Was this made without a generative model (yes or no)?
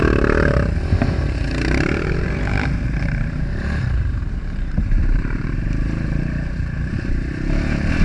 no